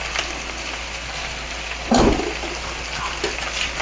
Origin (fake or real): real